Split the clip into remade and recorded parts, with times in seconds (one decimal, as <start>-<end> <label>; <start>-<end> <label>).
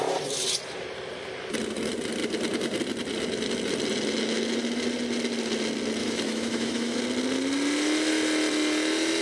0.0-6.0 recorded; 6.0-7.0 remade; 7.0-9.2 recorded